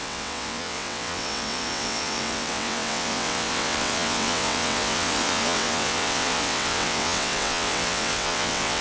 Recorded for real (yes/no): no